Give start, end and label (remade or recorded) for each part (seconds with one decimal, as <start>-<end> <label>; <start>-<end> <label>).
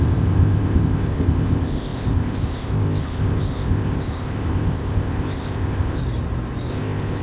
0.0-6.0 remade; 6.0-6.7 recorded; 6.7-7.2 remade